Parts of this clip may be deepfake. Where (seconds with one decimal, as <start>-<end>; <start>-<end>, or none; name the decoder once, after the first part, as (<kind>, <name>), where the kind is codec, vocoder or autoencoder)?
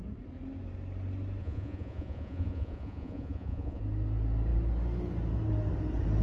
1.4-3.8 (vocoder, Vocos)